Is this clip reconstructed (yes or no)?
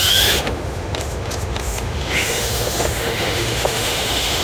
yes